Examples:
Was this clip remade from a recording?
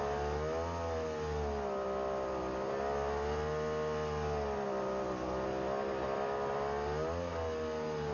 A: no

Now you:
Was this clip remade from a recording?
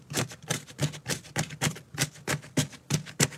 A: no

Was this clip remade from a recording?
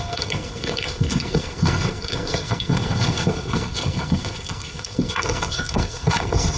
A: yes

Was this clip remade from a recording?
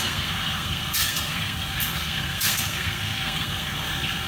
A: yes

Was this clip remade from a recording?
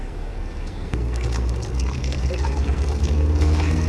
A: yes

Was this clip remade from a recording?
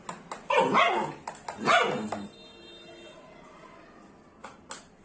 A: no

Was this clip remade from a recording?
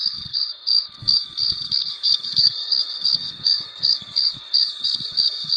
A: yes